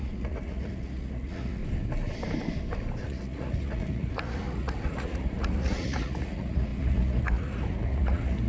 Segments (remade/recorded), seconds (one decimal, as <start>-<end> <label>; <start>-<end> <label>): 0.0-1.6 remade; 1.6-3.0 recorded; 3.0-8.5 remade